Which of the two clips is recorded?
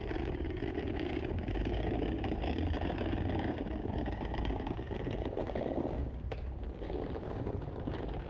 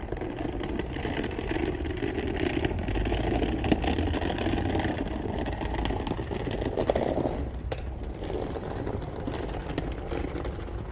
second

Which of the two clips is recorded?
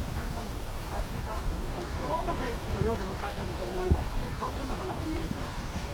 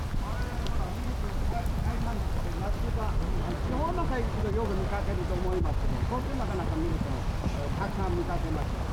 second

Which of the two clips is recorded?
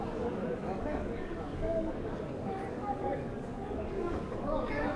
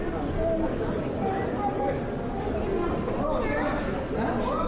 second